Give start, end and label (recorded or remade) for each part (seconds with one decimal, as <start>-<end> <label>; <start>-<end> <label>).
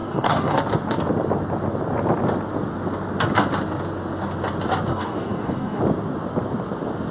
0.0-0.6 remade; 0.6-4.9 recorded; 4.9-5.8 remade; 5.8-7.1 recorded